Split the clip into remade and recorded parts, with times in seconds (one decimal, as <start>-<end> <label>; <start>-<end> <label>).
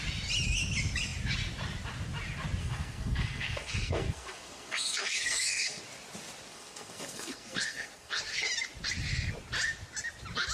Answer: 0.0-2.6 recorded; 2.6-5.8 remade; 5.8-6.5 recorded; 6.5-8.2 remade; 8.2-10.5 recorded